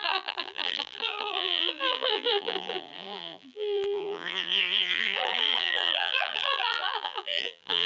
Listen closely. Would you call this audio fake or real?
fake